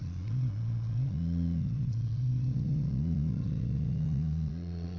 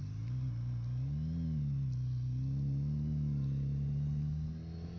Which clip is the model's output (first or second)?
first